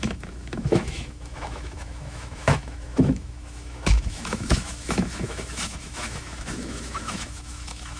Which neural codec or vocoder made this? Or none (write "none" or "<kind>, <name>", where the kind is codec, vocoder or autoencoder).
autoencoder, DAC-VAE